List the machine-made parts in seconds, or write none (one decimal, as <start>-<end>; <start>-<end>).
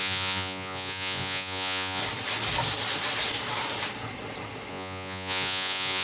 0.0-2.0; 4.7-6.0